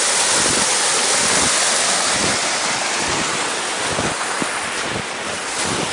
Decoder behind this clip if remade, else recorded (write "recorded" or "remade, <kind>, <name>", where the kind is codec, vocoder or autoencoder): recorded